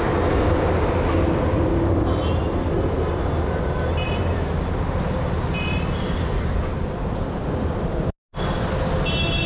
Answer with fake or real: real